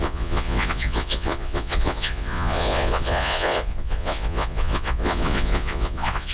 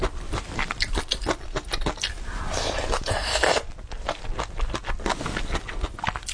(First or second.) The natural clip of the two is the second